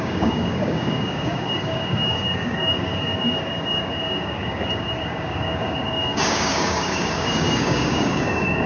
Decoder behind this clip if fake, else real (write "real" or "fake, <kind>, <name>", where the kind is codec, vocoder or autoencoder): fake, codec, DAC